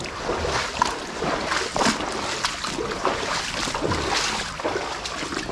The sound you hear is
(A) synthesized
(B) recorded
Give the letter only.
B